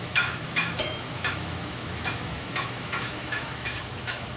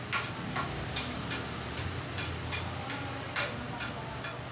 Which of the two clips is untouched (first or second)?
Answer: second